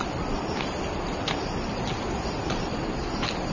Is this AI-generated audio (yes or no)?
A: no